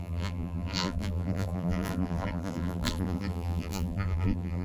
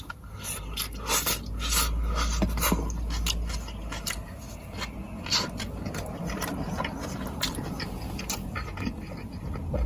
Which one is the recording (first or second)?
second